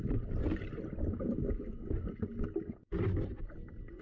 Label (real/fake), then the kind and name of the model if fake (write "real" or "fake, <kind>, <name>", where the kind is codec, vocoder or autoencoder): real